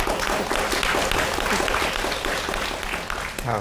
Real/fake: real